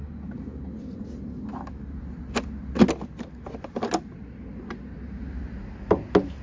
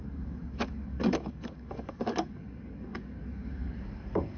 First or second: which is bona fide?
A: first